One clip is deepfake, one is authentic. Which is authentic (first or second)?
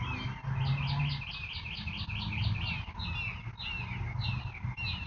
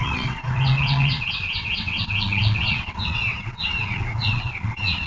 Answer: first